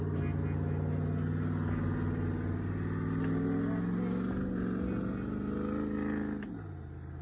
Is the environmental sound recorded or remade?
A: recorded